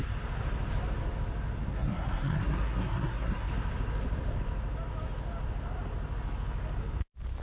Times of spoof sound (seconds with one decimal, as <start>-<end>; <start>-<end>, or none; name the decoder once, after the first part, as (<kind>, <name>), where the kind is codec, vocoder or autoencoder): 1.7-3.5 (codec, SNAC)